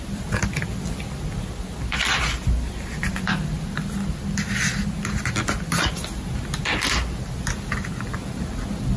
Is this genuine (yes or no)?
yes